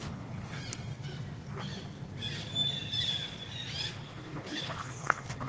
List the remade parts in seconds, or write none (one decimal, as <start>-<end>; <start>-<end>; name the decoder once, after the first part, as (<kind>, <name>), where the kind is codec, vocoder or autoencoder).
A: 0.0-0.6 (codec, HILCodec); 3.9-5.5

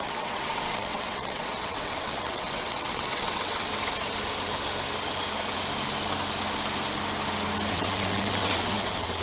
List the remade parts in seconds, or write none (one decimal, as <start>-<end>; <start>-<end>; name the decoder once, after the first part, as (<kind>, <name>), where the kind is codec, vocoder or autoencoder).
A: 0.0-3.7 (vocoder, WaveNeXt); 7.7-9.2

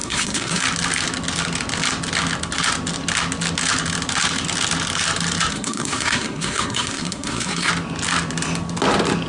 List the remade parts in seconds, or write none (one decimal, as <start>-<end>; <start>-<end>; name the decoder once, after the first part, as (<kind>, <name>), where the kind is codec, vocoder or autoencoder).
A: 0.0-0.6 (codec, SNAC); 5.5-7.7